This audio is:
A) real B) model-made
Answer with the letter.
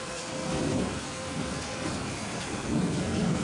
B